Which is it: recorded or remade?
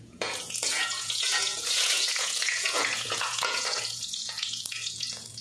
remade